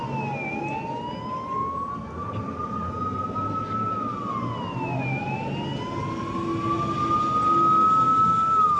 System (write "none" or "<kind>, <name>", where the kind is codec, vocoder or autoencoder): none